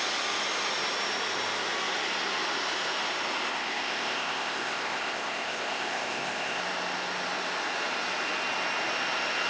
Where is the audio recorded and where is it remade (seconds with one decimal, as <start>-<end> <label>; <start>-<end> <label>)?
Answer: 0.0-3.5 recorded; 3.5-6.6 remade; 6.6-9.5 recorded